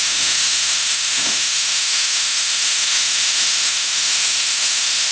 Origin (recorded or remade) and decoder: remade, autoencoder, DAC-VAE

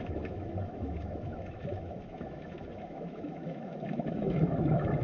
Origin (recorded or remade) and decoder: remade, autoencoder, DAC-VAE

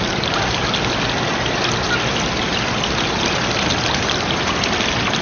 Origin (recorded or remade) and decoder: recorded